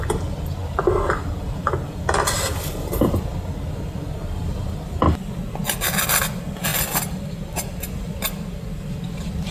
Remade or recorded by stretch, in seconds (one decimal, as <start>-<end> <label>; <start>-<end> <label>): 0.0-9.5 recorded